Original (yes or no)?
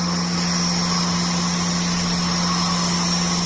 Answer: yes